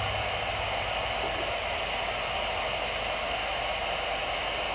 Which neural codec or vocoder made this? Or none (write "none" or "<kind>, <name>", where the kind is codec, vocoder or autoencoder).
none